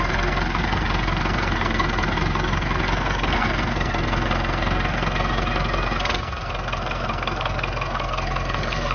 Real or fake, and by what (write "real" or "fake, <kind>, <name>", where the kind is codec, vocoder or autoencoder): fake, codec, SNAC